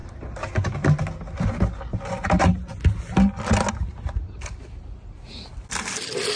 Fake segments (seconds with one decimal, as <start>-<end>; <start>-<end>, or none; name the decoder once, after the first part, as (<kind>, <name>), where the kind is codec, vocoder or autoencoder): none